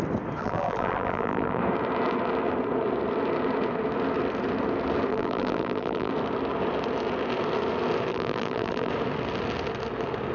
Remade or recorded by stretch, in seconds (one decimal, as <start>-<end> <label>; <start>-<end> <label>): 0.0-0.4 recorded; 0.4-1.6 remade; 1.6-5.1 recorded; 5.1-6.1 remade; 6.1-8.1 recorded; 8.1-8.9 remade; 8.9-10.3 recorded